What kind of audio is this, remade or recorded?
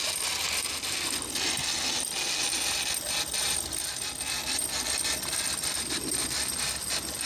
recorded